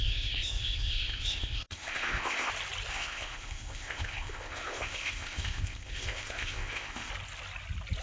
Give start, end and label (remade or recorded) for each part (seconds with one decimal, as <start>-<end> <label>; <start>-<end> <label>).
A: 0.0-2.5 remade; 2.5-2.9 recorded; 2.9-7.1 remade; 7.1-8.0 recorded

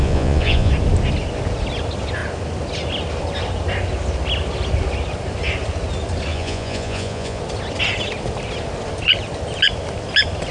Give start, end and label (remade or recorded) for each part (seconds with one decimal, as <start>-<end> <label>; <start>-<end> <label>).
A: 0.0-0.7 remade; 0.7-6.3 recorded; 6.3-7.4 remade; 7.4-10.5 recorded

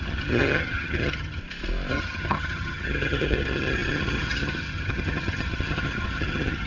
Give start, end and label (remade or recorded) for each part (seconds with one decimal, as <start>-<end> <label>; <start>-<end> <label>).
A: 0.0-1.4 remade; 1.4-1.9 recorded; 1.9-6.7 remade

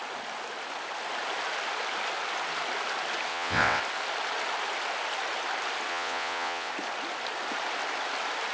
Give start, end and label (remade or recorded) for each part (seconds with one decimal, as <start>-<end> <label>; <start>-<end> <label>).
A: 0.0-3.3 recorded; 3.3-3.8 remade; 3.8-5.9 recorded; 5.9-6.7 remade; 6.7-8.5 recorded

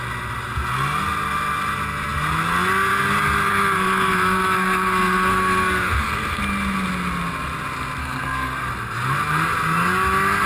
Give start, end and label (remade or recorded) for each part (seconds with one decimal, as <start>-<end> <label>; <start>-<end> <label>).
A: 0.0-3.5 recorded; 3.5-6.4 remade; 6.4-8.0 recorded; 8.0-8.7 remade; 8.7-10.5 recorded

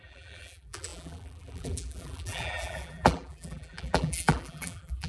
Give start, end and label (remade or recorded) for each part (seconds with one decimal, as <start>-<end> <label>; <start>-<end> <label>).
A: 0.0-5.1 remade